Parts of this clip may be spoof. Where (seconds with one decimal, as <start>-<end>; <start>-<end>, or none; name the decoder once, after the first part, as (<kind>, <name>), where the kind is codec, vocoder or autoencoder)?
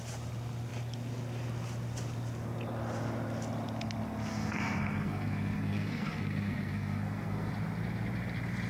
4.3-7.5 (codec, SNAC)